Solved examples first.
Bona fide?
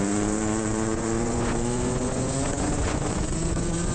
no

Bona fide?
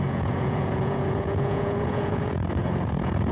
no